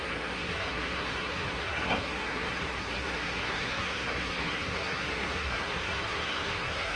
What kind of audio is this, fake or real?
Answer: fake